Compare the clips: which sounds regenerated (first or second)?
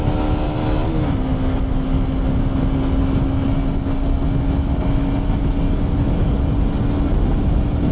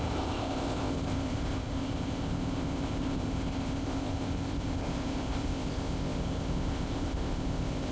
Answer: second